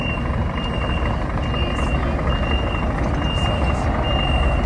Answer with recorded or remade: recorded